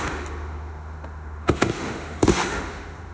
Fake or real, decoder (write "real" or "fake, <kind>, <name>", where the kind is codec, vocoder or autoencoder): fake, autoencoder, DAC-VAE